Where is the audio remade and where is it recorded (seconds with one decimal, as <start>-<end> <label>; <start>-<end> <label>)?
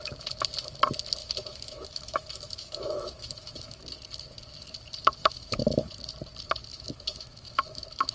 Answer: 0.0-1.2 recorded; 1.2-3.8 remade; 3.8-5.2 recorded; 5.2-5.9 remade; 5.9-6.7 recorded; 6.7-8.1 remade